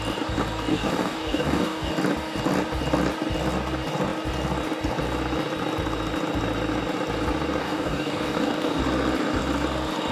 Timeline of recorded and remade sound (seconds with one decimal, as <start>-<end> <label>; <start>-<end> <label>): 0.0-0.7 recorded; 0.7-1.9 remade; 1.9-7.6 recorded; 7.6-8.8 remade; 8.8-10.1 recorded